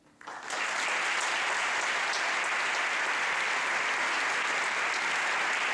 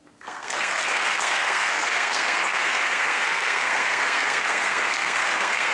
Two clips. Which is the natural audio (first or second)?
first